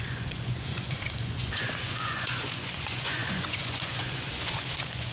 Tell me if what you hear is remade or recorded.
remade